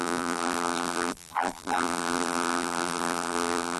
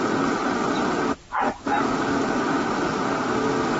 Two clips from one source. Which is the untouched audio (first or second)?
second